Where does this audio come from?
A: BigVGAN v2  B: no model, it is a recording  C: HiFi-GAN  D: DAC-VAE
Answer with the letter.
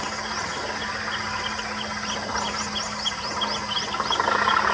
B